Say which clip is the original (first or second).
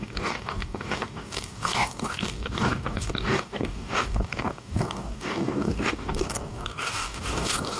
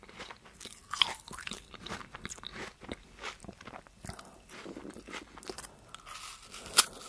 second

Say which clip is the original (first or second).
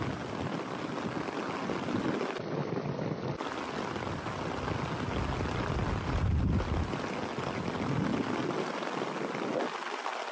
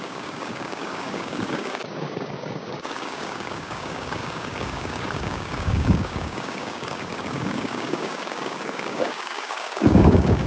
first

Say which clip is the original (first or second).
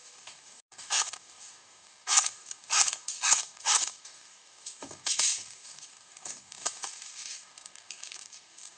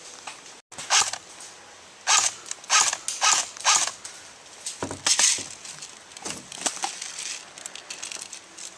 second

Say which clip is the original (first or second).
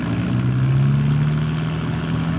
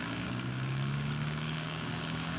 first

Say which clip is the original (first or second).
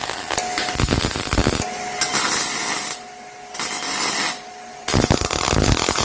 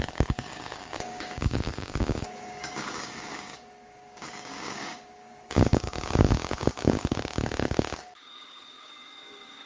first